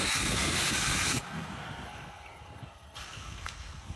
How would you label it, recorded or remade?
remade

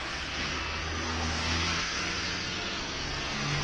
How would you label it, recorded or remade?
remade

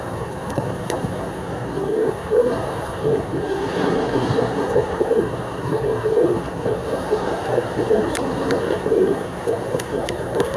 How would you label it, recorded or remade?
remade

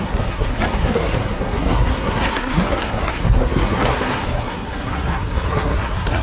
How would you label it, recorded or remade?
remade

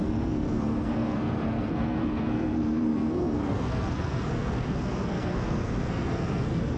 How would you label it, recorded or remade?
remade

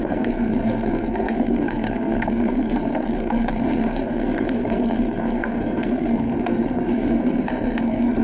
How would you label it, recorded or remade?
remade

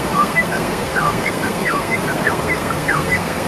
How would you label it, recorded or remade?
remade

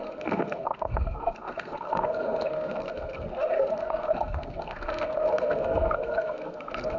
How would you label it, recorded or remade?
remade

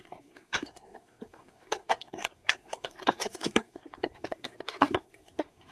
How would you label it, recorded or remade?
remade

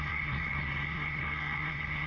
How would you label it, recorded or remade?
remade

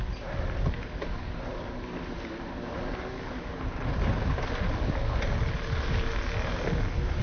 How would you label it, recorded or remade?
recorded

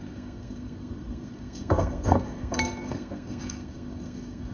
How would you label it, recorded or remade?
remade